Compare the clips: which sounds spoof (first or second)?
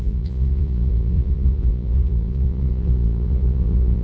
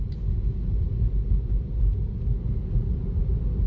first